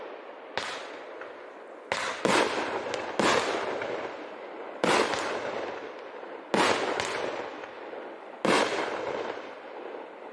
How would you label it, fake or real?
real